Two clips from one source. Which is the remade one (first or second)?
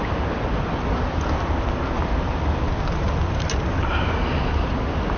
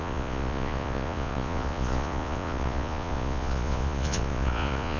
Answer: second